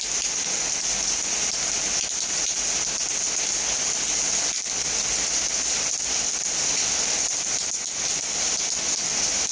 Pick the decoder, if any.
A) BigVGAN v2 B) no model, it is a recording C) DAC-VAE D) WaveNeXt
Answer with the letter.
B